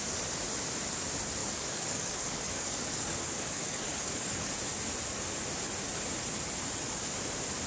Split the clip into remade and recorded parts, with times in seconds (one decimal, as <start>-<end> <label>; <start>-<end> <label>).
0.0-1.4 recorded; 1.4-4.5 remade; 4.5-7.7 recorded